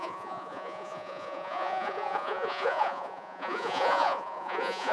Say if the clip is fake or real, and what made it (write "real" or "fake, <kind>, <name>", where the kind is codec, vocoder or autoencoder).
fake, vocoder, Vocos